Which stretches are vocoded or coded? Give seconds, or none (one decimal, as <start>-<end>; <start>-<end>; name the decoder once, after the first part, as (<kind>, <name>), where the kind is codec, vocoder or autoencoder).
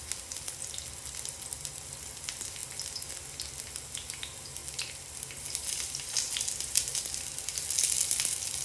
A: none